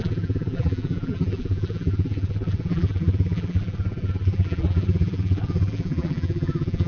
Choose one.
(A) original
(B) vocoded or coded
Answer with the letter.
B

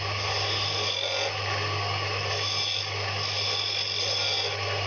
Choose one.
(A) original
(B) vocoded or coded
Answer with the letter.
A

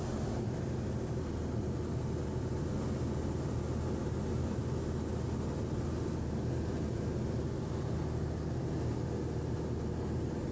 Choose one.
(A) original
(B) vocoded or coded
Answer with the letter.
A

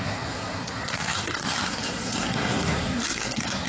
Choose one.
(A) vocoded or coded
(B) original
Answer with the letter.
A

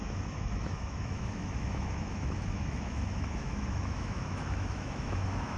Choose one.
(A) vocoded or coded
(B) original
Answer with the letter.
A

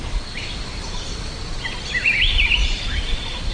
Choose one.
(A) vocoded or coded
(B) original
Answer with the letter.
A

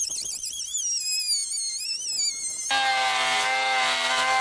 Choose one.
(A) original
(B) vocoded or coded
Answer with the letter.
A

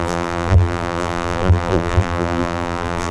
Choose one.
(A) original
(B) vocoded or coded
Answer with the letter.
B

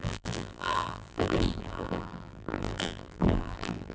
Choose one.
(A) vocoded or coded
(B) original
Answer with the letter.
A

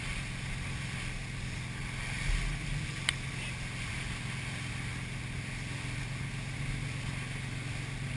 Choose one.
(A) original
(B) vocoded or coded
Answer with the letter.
A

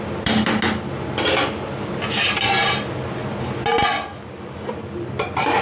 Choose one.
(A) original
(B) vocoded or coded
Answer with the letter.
A